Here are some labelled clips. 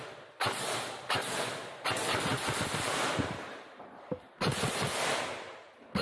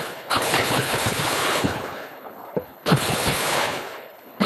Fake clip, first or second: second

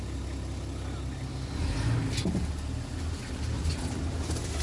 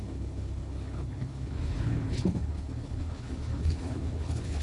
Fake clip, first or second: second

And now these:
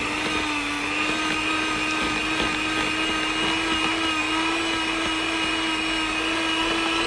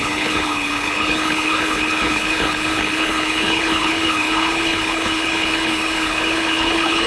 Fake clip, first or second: second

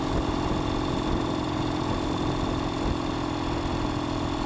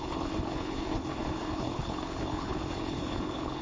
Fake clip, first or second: second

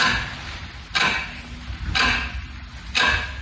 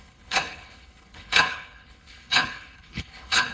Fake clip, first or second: second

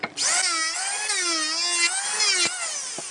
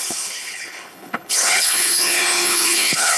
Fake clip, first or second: second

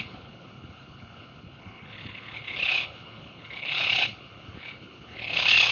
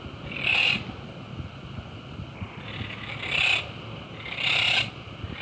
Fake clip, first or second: first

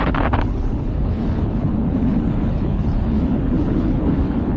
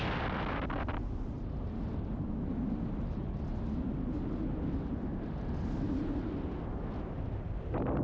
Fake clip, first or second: first